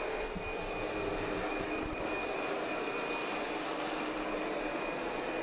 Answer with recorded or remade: recorded